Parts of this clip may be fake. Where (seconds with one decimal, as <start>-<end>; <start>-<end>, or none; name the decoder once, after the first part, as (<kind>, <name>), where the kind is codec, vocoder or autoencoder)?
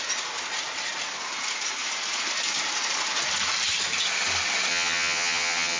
4.7-5.8 (vocoder, HiFi-GAN)